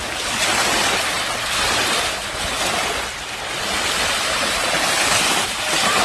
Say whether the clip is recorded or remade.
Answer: remade